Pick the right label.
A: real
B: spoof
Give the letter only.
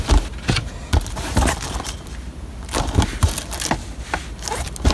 A